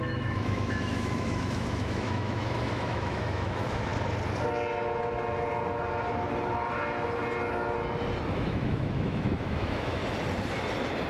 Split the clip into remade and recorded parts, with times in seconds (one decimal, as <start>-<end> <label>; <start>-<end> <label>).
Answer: 0.0-3.9 remade; 3.9-8.3 recorded; 8.3-10.0 remade; 10.0-11.1 recorded